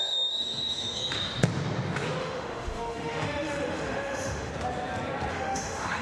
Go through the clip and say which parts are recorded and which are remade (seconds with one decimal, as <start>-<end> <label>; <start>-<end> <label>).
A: 0.0-1.0 remade; 1.0-2.2 recorded; 2.2-4.5 remade; 4.5-5.3 recorded; 5.3-6.0 remade